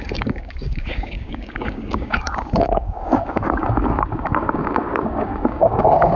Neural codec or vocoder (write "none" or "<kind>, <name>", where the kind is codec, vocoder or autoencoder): codec, DAC